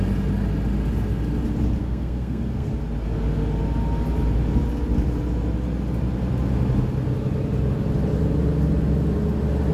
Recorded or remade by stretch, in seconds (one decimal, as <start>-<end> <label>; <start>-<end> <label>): 0.0-1.8 recorded; 1.8-2.7 remade; 2.7-9.7 recorded

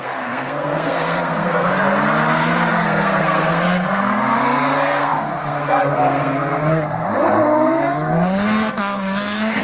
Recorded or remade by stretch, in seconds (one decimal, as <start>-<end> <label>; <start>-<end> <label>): 0.0-1.7 remade; 1.7-2.7 recorded; 2.7-9.6 remade

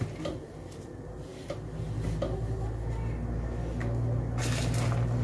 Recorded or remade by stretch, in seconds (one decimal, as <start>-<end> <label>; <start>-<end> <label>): 0.0-5.2 recorded

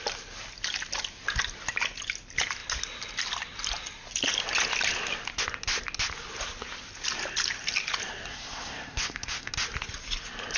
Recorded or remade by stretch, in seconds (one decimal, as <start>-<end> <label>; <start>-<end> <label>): 0.0-8.3 recorded; 8.3-9.5 remade; 9.5-10.6 recorded

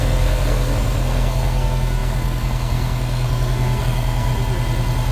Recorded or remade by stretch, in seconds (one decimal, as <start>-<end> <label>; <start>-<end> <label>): 0.0-4.3 remade; 4.3-5.1 recorded

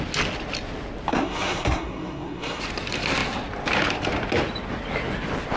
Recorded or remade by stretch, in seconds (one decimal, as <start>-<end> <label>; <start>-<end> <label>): 0.0-1.1 recorded; 1.1-2.6 remade; 2.6-5.6 recorded